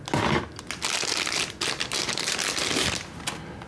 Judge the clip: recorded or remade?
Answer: recorded